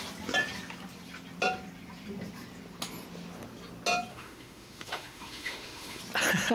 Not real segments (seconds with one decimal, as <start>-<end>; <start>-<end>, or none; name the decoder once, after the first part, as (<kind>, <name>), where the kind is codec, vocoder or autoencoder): 4.1-6.0 (autoencoder, DAC-VAE)